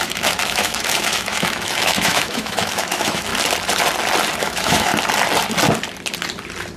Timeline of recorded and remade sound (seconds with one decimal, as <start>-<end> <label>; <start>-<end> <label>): 0.0-3.3 remade; 3.3-4.4 recorded; 4.4-4.9 remade; 4.9-6.8 recorded